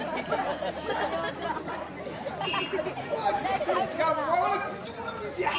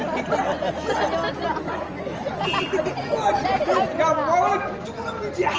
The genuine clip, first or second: second